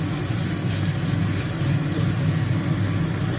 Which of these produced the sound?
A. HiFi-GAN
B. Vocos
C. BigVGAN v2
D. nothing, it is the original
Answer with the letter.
D